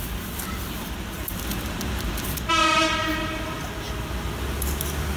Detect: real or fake real